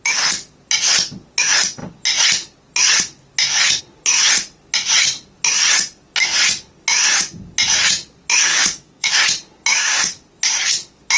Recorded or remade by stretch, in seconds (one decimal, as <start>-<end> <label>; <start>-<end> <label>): 0.0-8.5 recorded; 8.5-9.1 remade; 9.1-9.7 recorded; 9.7-10.2 remade; 10.2-11.2 recorded